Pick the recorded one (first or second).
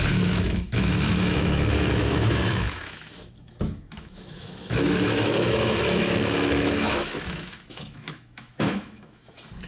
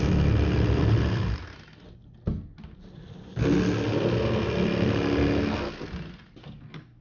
second